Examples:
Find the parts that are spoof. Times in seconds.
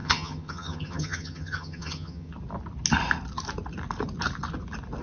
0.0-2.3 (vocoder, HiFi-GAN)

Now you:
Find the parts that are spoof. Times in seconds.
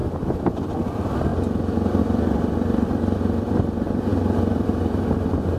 0.5-1.3 (vocoder, BigVGAN v2); 2.0-5.6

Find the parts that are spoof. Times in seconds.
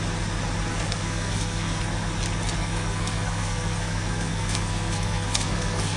0.7-1.8 (codec, SNAC); 2.6-6.0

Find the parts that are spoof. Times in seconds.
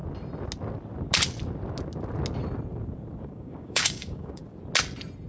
3.2-4.4 (codec, DAC)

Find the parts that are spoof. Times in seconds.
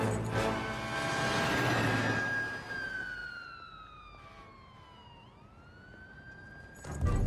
none